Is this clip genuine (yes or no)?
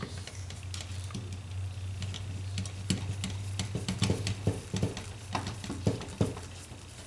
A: yes